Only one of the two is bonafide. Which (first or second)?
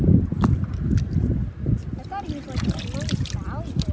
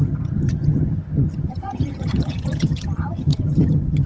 first